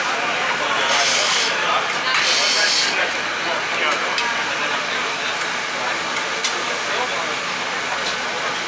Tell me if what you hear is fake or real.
real